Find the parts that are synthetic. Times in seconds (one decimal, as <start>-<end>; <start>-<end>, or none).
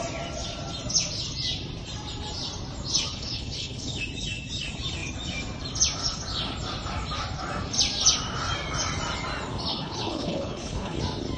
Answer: 3.1-4.0; 9.7-11.0